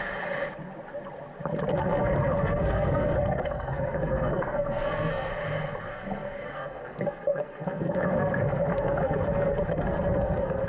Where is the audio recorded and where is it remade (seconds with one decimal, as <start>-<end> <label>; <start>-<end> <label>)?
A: 0.0-1.7 recorded; 1.7-5.3 remade; 5.3-5.9 recorded; 5.9-10.7 remade